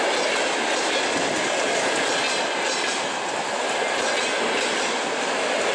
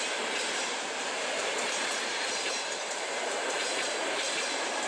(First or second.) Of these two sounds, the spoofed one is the second